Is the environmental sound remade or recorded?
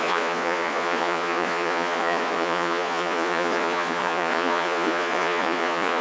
remade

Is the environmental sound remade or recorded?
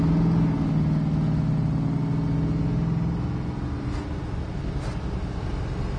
recorded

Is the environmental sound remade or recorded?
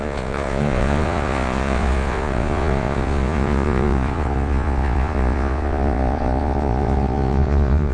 remade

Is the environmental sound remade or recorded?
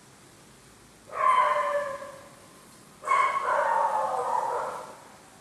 recorded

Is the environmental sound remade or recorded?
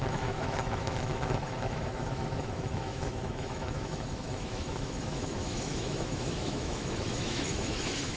remade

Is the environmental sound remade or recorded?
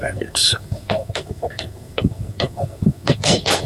remade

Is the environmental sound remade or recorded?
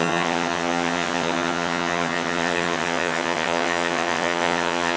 remade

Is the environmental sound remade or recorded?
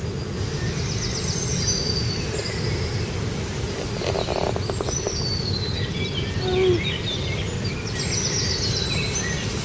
recorded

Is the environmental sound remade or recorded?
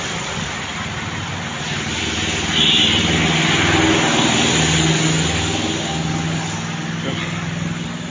recorded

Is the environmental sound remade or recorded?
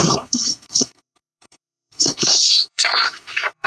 remade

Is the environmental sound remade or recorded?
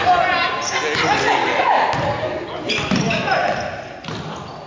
recorded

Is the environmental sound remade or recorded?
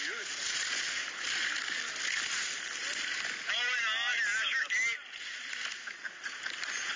recorded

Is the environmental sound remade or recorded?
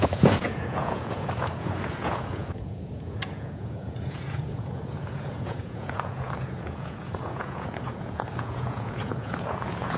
remade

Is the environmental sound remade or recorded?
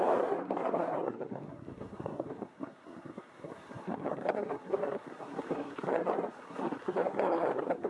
remade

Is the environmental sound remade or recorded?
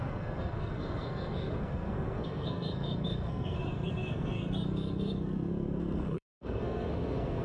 remade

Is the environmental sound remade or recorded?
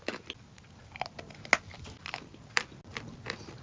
recorded